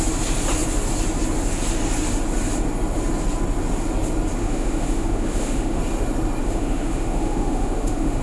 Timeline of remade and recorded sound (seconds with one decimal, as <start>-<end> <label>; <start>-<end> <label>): 0.0-4.4 recorded; 4.4-5.8 remade; 5.8-6.4 recorded; 6.4-8.2 remade